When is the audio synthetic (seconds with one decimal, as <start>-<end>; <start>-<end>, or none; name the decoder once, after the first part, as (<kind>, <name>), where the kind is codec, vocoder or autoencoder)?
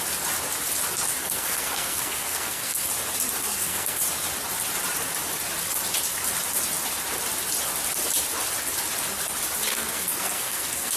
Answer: 1.2-2.9 (codec, SNAC); 3.4-4.0; 9.7-11.0